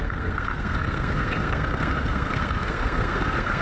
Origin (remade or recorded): remade